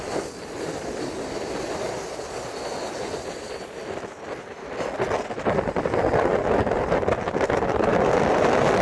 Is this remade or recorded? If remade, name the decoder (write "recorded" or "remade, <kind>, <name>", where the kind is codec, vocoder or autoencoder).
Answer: recorded